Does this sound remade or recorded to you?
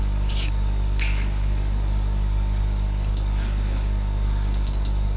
remade